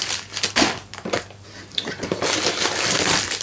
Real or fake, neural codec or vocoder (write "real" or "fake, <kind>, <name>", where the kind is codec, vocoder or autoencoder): real